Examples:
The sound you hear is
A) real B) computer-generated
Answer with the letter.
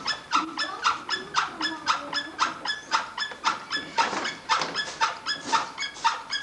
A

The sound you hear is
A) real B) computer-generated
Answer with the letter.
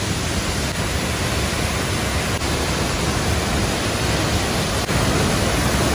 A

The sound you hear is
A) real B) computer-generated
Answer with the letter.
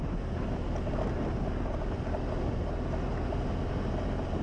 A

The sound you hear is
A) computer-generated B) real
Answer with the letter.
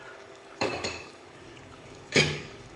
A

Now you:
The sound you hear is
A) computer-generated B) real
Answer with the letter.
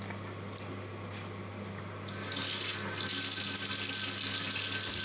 B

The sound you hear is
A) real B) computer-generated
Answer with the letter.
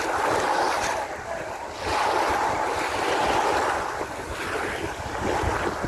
A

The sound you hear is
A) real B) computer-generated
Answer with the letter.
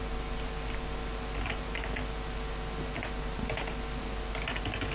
A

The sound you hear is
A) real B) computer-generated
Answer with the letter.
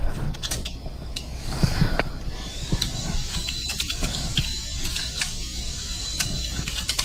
B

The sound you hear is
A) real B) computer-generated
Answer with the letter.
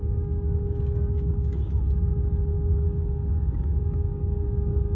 B